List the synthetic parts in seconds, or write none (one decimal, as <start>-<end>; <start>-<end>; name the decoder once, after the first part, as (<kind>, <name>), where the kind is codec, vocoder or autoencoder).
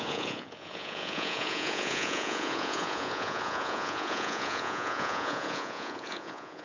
0.0-6.6 (vocoder, Vocos)